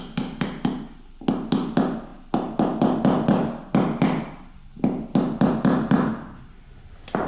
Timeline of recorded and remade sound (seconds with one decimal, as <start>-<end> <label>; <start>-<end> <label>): 0.0-7.3 recorded